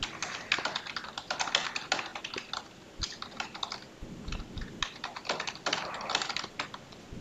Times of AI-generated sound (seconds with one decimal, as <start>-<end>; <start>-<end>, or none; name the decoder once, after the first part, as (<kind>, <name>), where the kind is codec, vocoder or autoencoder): none